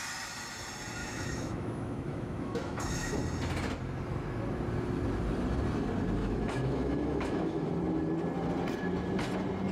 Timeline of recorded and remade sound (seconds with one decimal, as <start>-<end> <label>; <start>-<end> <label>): 0.0-1.0 recorded; 1.0-3.2 remade; 3.2-6.2 recorded; 6.2-7.7 remade; 7.7-9.7 recorded